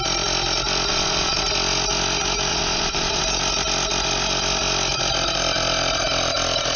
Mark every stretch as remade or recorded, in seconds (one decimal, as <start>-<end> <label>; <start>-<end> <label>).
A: 0.0-0.9 recorded; 0.9-1.4 remade; 1.4-2.5 recorded; 2.5-3.2 remade; 3.2-6.8 recorded